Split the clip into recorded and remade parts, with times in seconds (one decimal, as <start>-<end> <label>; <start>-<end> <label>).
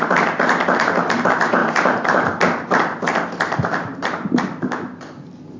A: 0.0-5.6 remade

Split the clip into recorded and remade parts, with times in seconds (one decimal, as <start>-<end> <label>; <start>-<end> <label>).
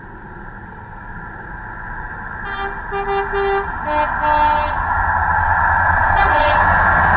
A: 0.0-5.3 recorded; 5.3-6.5 remade; 6.5-7.2 recorded